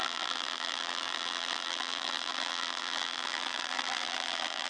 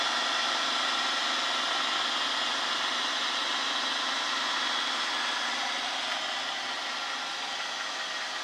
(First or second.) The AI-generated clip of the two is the first